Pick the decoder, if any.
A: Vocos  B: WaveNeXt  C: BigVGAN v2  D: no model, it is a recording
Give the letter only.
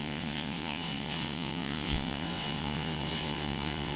B